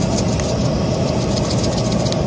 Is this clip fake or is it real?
real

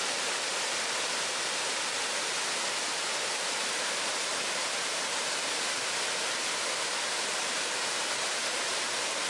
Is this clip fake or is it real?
real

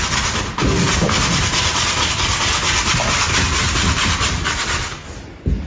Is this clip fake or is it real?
real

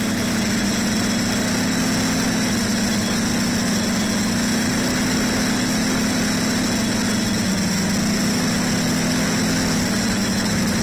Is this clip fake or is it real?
real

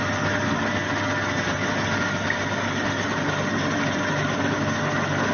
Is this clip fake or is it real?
real